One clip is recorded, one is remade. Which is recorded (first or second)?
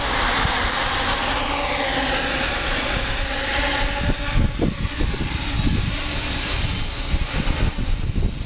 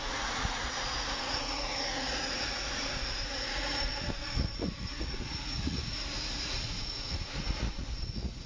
first